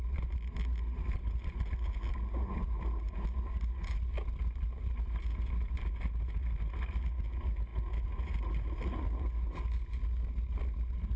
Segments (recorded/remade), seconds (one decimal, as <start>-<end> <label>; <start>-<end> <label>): 0.0-11.2 recorded